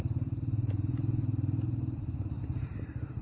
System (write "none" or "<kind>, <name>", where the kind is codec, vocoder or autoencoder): vocoder, BigVGAN v2